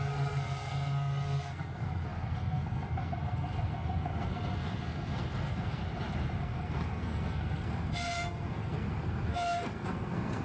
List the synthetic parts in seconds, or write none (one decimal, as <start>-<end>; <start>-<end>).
0.0-5.8; 6.4-10.4